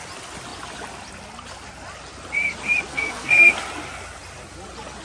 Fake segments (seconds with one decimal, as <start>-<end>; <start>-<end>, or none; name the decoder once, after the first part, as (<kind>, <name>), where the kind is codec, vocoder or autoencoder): 2.9-3.5 (codec, SNAC)